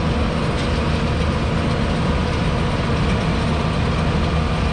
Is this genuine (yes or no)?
yes